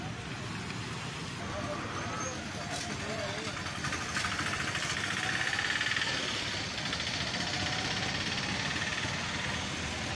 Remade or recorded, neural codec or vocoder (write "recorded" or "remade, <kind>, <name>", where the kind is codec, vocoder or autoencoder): recorded